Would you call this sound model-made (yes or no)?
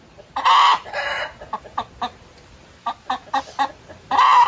no